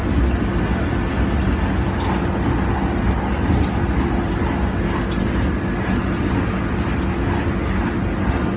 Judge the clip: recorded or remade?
recorded